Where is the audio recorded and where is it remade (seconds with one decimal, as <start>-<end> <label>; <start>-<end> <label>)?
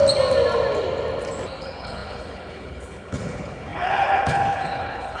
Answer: 0.0-1.6 recorded; 1.6-5.2 remade